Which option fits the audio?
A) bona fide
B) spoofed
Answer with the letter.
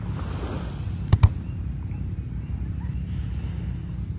A